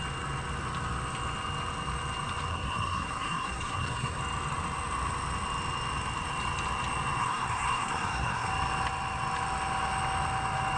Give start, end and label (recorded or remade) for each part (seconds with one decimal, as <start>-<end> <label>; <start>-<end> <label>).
0.0-2.5 recorded; 2.5-4.2 remade; 4.2-7.2 recorded; 7.2-8.5 remade; 8.5-10.8 recorded